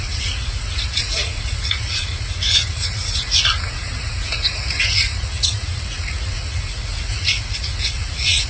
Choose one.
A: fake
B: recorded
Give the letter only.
A